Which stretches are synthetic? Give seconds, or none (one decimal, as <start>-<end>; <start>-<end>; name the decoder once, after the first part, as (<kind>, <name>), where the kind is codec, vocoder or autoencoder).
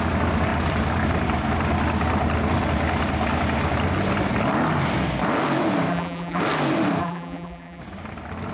5.9-6.4 (vocoder, BigVGAN v2); 7.0-7.8